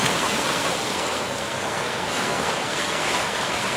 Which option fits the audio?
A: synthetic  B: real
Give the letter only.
A